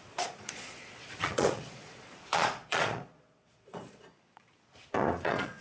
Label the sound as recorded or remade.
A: remade